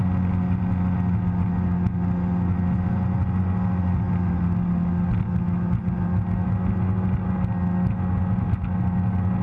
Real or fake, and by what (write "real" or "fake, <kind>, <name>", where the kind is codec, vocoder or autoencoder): real